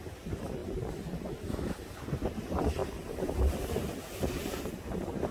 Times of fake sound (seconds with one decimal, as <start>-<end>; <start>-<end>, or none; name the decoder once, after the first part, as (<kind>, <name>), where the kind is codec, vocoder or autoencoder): 0.0-0.6 (vocoder, BigVGAN v2); 1.5-5.3